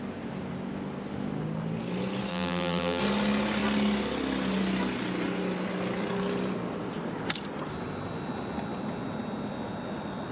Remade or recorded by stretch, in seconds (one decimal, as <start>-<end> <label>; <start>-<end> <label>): 0.0-2.3 recorded; 2.3-3.0 remade; 3.0-10.3 recorded